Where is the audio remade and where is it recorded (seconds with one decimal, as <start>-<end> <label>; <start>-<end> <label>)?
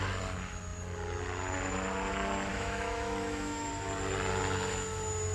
0.0-2.5 recorded; 2.5-3.7 remade; 3.7-5.3 recorded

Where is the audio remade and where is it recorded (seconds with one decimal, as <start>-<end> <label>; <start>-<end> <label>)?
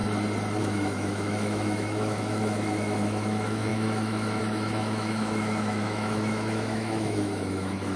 0.0-0.6 recorded; 0.6-8.0 remade